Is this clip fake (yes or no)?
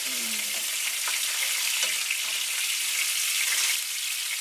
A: no